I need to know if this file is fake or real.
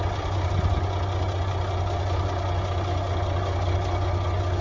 real